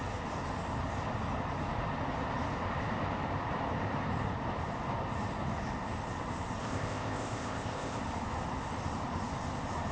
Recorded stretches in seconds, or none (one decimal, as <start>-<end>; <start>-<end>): 0.0-6.6; 8.0-9.9